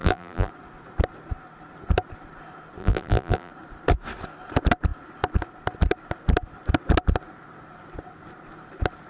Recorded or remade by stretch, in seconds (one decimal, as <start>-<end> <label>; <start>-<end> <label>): 0.0-0.5 remade; 0.5-2.8 recorded; 2.8-3.5 remade; 3.5-9.1 recorded